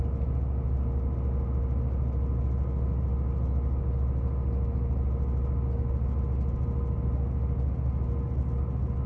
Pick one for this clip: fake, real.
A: real